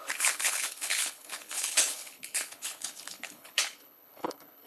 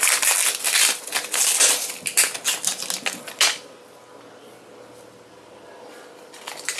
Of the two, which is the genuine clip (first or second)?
second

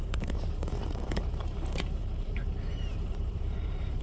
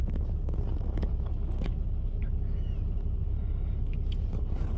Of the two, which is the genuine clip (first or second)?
second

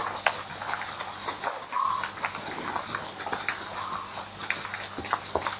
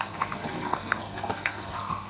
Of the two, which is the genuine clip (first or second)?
first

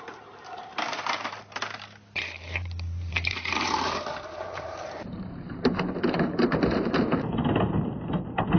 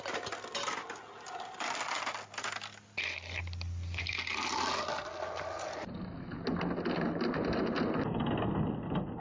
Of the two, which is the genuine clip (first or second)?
second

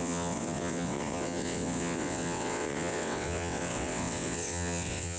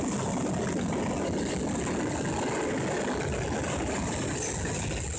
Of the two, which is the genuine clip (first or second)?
second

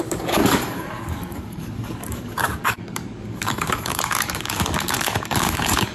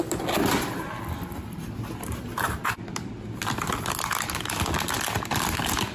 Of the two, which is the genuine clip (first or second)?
second